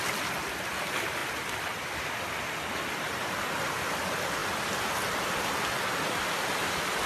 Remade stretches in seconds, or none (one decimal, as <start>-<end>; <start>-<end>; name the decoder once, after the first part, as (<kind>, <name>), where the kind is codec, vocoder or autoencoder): none